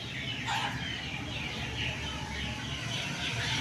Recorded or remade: recorded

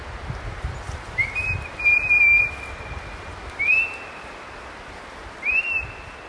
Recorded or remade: recorded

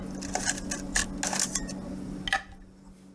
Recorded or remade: recorded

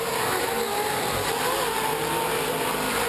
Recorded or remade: remade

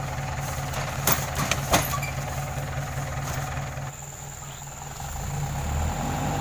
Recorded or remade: recorded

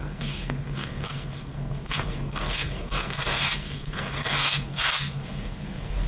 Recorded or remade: remade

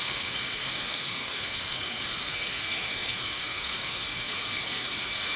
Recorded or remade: remade